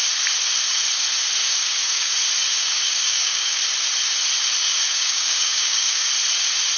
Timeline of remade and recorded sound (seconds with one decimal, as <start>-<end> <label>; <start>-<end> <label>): 0.0-1.4 recorded; 1.4-2.1 remade; 2.1-2.6 recorded; 2.6-3.6 remade; 3.6-4.6 recorded; 4.6-6.1 remade; 6.1-6.8 recorded